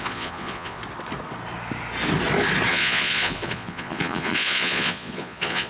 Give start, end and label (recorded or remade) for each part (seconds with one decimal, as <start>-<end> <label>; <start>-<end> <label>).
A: 0.0-0.8 remade; 0.8-2.7 recorded; 2.7-5.7 remade